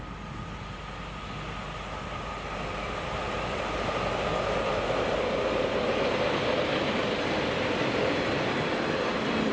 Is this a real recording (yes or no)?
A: yes